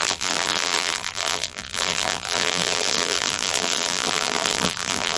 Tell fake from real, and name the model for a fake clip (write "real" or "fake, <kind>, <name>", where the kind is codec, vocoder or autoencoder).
fake, vocoder, BigVGAN v2